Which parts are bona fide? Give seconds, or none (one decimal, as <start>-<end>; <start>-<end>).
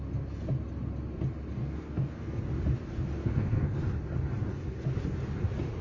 0.0-1.6; 2.4-3.2; 3.8-5.8